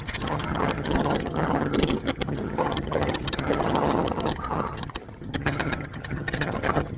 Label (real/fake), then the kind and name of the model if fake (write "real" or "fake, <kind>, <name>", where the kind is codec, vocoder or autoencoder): fake, vocoder, HiFi-GAN